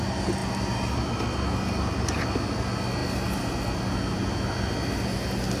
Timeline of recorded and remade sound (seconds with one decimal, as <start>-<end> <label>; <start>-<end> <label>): 0.0-5.6 recorded